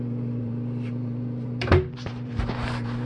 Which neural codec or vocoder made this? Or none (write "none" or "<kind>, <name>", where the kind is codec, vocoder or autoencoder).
vocoder, BigVGAN v2